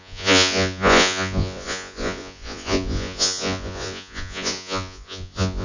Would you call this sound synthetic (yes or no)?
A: yes